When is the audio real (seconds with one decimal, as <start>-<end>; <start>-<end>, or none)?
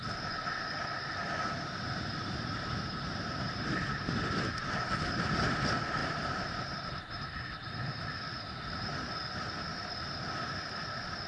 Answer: 0.0-2.2; 4.1-6.0; 7.3-11.3